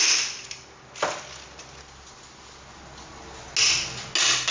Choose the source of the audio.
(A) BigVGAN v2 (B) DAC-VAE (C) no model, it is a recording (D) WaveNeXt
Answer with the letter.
C